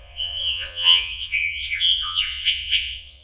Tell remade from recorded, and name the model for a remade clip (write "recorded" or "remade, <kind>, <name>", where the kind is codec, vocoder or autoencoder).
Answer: remade, vocoder, Vocos